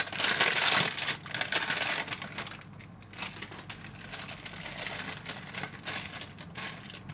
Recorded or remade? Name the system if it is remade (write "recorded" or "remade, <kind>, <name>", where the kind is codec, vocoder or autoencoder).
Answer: recorded